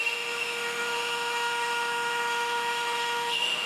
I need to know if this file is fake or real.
fake